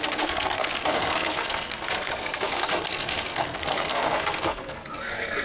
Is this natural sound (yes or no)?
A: no